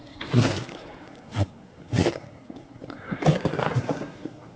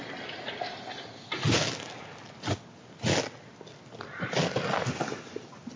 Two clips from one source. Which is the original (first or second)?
second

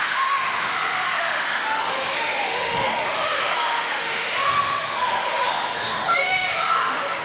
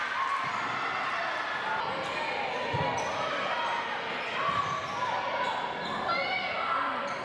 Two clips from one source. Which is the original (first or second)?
second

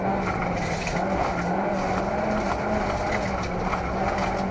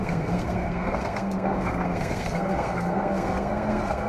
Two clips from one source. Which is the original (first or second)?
first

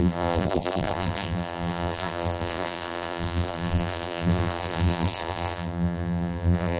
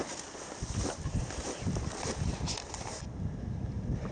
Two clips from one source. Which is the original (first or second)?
second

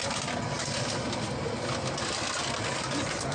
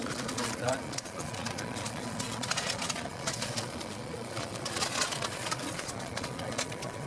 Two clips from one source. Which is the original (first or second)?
first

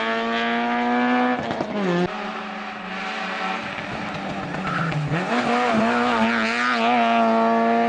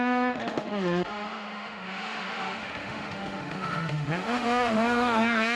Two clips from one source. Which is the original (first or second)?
first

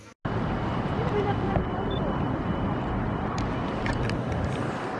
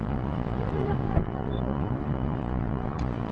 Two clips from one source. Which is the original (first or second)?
first